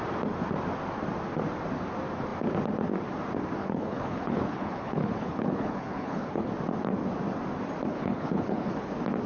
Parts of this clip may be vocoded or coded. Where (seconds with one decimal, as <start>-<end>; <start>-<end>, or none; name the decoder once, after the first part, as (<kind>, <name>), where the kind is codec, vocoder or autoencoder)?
3.6-6.5 (codec, HILCodec); 7.9-8.9